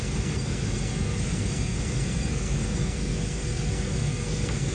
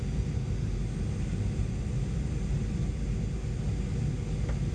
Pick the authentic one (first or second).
second